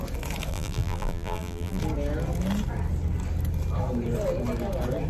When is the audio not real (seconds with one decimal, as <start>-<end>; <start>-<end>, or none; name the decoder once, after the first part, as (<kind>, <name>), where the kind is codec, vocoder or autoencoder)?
0.5-1.8 (vocoder, BigVGAN v2)

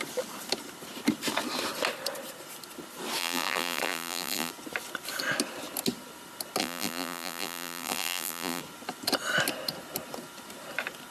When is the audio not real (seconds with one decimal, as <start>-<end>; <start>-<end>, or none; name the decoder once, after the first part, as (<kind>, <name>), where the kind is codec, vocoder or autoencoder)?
3.2-4.5 (vocoder, BigVGAN v2); 6.6-8.6

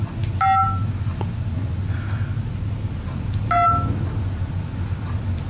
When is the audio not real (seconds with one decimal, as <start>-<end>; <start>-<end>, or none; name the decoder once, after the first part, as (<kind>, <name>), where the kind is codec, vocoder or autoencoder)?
none

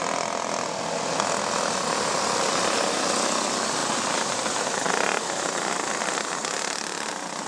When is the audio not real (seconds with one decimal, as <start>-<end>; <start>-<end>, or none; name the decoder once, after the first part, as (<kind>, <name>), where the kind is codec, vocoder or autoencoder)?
none

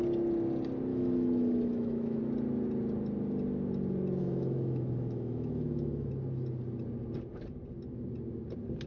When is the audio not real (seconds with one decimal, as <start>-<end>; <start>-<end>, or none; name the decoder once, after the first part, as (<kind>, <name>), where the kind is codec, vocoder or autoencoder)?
0.9-2.2 (autoencoder, DAC-VAE); 4.2-6.1